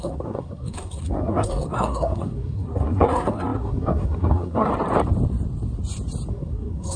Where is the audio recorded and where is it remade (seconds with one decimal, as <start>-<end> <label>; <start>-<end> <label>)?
0.0-4.7 remade; 4.7-6.3 recorded; 6.3-7.0 remade